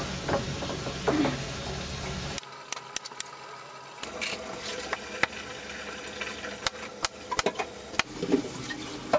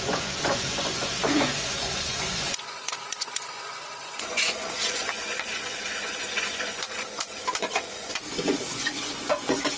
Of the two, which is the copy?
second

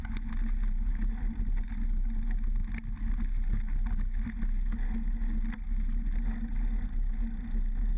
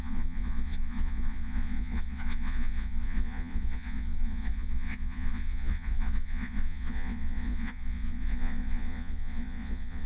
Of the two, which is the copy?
second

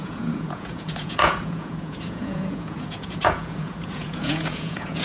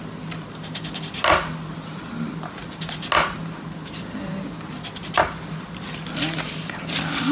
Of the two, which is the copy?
first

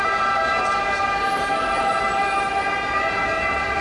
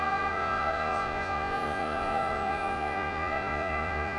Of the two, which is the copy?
second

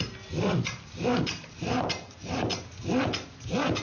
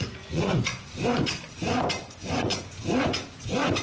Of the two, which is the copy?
second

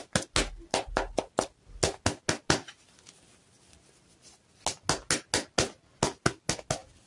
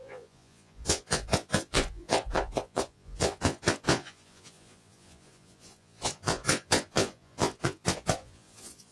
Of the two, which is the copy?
second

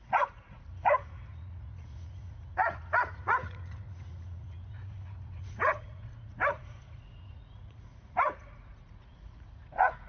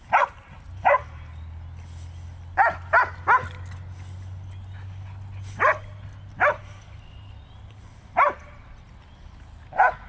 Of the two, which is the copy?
first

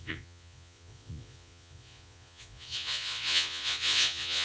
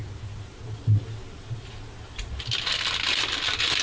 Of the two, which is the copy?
first